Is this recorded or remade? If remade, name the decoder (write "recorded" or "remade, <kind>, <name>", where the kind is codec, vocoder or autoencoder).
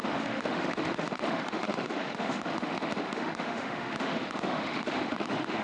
remade, autoencoder, DAC-VAE